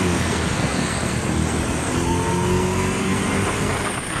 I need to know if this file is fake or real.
fake